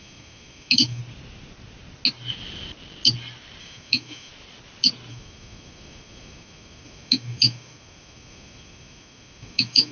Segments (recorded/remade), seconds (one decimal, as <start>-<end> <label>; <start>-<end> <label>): 0.0-1.0 remade; 1.0-3.6 recorded; 3.6-4.3 remade; 4.3-5.1 recorded; 5.1-9.9 remade